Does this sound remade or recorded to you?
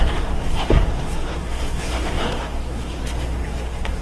remade